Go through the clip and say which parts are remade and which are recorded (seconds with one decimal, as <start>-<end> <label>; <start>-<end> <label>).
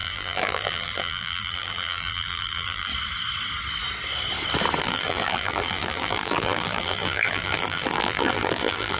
0.0-2.9 remade; 2.9-4.8 recorded; 4.8-9.0 remade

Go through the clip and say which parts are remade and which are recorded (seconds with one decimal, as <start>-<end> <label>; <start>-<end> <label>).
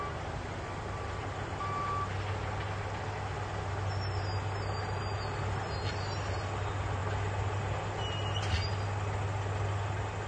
0.0-10.3 recorded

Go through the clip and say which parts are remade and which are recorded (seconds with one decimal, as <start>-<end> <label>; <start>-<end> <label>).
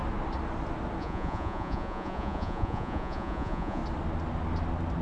0.0-1.0 recorded; 1.0-3.8 remade; 3.8-5.0 recorded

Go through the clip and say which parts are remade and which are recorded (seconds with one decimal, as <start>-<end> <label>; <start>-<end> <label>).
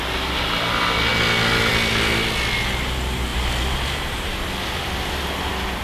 0.0-5.8 recorded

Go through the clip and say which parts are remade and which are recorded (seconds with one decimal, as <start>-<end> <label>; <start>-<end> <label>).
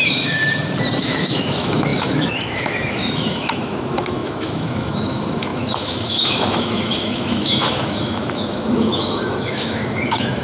0.0-0.4 remade; 0.4-1.0 recorded; 1.0-10.4 remade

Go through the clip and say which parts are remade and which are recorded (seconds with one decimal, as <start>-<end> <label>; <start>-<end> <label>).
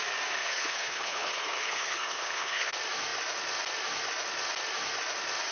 0.0-0.4 recorded; 0.4-2.7 remade; 2.7-5.5 recorded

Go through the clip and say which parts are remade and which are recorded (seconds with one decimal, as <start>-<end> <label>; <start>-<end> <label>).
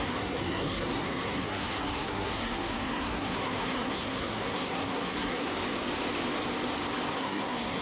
0.0-5.5 remade; 5.5-7.1 recorded; 7.1-7.8 remade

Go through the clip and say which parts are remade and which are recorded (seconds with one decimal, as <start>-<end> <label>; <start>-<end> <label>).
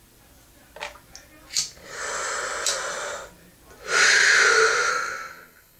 0.0-4.9 recorded; 4.9-5.8 remade